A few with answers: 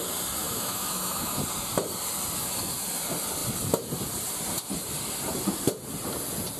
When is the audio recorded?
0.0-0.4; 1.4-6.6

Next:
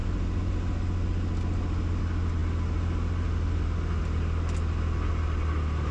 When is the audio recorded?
0.0-5.9

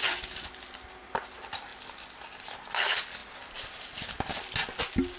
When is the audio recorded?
0.0-5.2

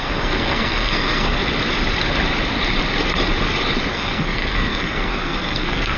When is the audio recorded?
1.4-3.9